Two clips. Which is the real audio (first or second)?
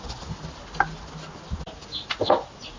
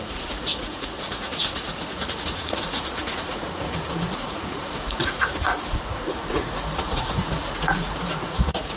first